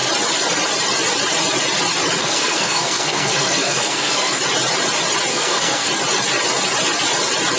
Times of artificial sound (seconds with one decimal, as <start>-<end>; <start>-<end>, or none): 2.2-4.4; 5.3-5.9